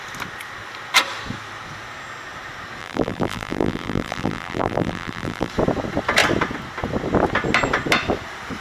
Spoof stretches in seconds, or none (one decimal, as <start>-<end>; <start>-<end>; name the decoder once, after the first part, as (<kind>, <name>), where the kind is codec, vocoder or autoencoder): 2.8-5.5 (vocoder, BigVGAN v2)